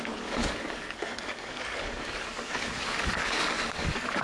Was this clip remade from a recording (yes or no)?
yes